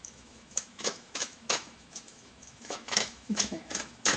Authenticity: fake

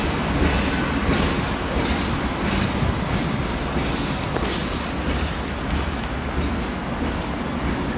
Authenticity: real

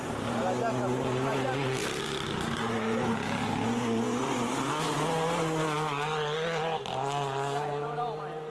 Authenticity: real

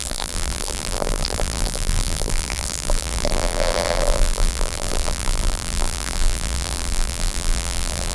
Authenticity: fake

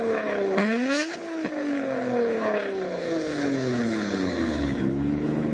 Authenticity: fake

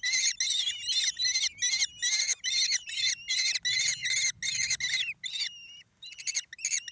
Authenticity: real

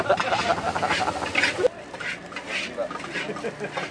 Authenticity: real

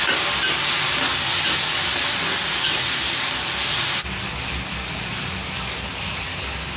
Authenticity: real